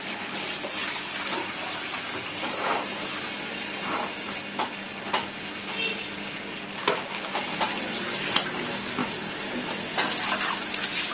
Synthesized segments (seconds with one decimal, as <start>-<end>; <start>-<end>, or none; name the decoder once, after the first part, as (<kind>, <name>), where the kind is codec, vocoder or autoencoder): 6.8-7.4 (codec, DAC)